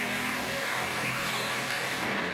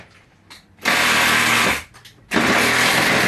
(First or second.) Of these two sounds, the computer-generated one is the first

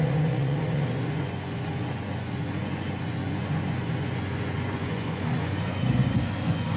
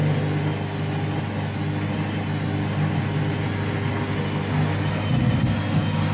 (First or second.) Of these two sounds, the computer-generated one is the first